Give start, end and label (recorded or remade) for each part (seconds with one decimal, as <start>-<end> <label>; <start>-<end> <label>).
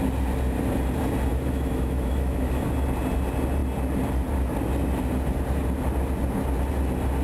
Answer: 0.0-1.3 recorded; 1.3-2.7 remade; 2.7-7.2 recorded